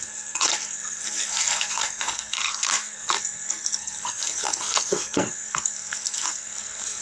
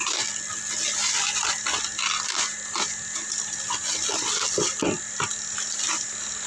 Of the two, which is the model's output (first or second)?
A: first